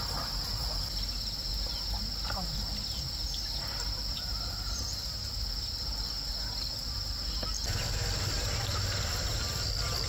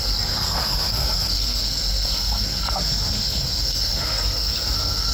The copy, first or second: second